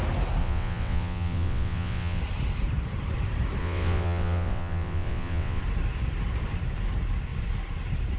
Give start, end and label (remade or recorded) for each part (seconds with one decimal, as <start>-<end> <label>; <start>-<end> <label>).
0.0-0.4 recorded; 0.4-2.2 remade; 2.2-3.6 recorded; 3.6-5.6 remade; 5.6-8.2 recorded